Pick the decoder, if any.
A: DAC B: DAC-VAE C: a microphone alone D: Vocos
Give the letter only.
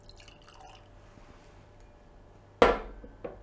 C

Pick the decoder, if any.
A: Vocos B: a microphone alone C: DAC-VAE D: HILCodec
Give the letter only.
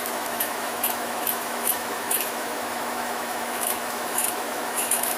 C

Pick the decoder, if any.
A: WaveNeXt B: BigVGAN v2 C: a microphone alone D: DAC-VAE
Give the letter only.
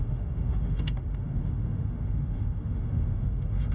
D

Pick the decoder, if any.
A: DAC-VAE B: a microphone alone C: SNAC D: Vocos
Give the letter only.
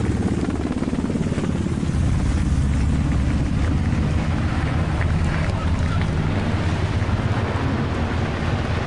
B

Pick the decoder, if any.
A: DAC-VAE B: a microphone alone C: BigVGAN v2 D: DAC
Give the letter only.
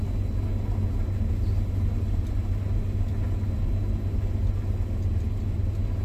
B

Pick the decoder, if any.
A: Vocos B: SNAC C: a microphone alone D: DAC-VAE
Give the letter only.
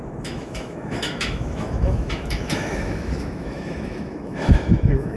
D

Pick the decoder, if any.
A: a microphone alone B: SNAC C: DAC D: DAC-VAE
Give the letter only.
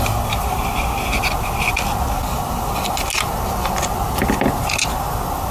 A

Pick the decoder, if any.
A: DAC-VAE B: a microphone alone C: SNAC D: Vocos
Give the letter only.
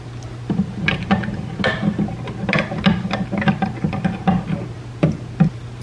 B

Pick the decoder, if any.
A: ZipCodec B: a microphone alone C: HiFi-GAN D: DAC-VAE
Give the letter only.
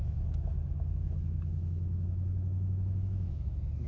D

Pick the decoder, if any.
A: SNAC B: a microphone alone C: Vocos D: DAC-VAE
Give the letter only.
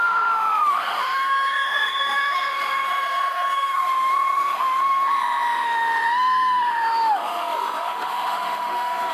D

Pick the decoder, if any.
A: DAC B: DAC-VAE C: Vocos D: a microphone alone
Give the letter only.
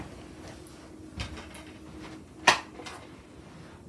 D